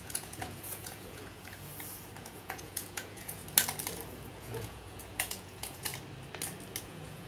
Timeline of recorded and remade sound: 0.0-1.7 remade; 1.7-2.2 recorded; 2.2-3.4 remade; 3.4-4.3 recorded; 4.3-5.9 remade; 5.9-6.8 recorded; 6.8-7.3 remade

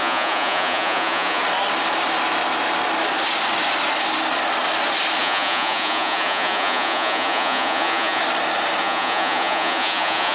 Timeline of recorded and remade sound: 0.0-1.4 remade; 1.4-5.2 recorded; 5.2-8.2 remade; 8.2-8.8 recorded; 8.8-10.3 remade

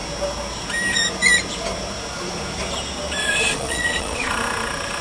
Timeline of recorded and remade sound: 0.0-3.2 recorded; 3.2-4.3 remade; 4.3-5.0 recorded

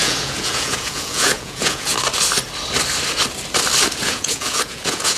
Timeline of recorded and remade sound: 0.0-1.9 remade; 1.9-3.9 recorded; 3.9-5.2 remade

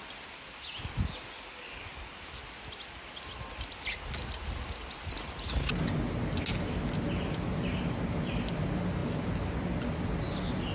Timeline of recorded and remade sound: 0.0-10.7 recorded